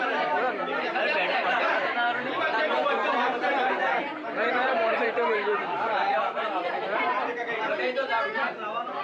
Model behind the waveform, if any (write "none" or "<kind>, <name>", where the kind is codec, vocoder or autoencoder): vocoder, BigVGAN v2